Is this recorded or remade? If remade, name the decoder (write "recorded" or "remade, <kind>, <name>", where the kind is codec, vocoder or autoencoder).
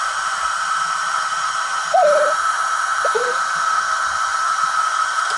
recorded